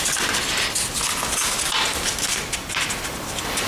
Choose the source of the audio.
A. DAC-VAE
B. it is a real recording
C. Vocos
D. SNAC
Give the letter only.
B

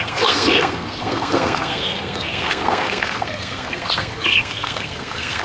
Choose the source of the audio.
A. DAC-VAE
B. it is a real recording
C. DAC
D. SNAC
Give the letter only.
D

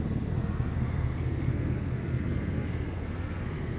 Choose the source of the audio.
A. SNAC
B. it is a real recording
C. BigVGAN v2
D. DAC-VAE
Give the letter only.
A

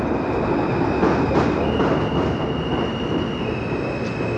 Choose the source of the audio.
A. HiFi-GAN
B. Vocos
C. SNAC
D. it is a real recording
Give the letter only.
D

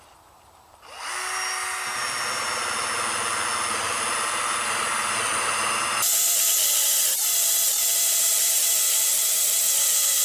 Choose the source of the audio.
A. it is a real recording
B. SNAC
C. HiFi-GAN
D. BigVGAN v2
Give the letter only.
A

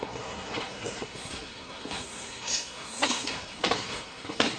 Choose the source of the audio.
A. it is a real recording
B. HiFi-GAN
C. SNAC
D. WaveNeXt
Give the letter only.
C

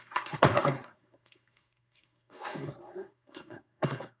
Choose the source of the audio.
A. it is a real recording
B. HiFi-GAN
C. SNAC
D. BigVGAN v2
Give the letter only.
C